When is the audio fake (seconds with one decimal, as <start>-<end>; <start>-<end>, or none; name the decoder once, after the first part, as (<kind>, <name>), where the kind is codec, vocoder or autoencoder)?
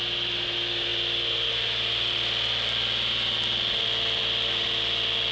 none